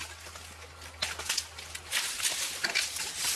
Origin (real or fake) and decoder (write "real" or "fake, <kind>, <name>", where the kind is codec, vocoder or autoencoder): real